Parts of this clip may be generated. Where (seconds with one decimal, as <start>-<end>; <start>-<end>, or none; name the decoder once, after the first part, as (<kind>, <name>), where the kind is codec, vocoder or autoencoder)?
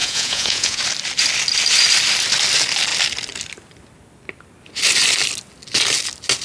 0.0-0.8 (vocoder, Vocos)